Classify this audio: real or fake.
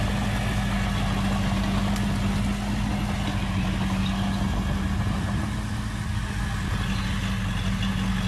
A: real